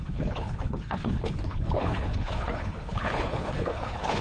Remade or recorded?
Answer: remade